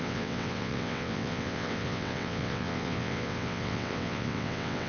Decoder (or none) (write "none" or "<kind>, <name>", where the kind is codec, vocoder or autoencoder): vocoder, WaveNeXt